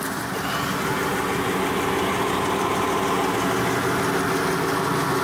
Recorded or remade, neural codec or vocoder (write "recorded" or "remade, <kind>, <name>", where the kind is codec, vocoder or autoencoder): recorded